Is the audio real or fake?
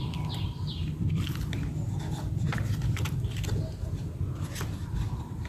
real